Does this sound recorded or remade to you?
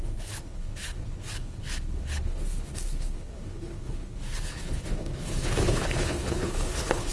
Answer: remade